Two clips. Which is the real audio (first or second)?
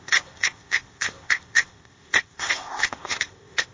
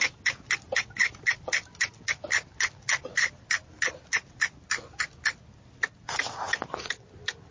second